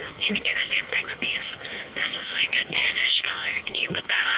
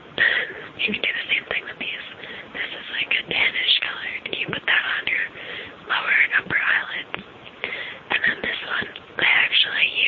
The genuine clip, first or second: second